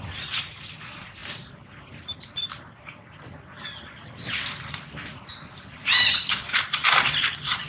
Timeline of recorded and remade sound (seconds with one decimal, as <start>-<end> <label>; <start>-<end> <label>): 0.0-7.7 remade